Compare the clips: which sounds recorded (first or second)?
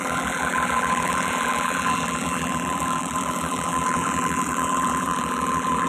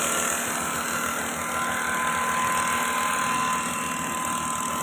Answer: second